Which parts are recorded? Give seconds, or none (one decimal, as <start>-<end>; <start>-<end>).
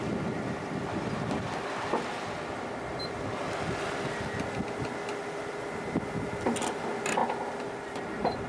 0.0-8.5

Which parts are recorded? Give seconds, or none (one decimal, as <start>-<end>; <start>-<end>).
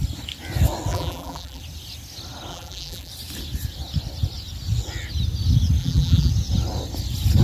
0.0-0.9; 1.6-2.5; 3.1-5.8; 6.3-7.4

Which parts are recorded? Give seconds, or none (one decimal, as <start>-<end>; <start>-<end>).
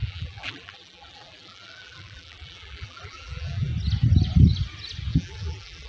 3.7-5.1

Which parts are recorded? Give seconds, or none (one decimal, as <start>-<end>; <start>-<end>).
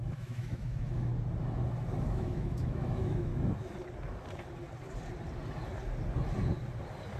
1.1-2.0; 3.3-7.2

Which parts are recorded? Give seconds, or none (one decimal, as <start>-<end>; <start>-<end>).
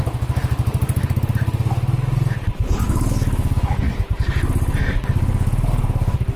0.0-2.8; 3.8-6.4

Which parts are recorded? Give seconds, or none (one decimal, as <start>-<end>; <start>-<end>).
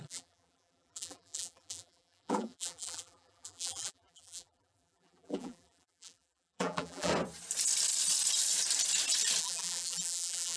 7.1-9.4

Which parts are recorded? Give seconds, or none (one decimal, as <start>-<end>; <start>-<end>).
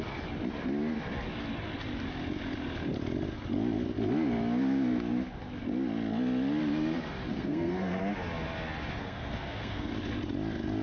0.0-7.3; 8.0-9.0; 9.9-10.8